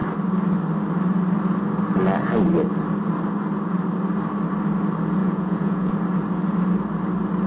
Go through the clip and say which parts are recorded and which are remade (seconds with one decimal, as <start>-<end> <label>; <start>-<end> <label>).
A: 0.0-5.2 recorded; 5.2-5.9 remade; 5.9-7.5 recorded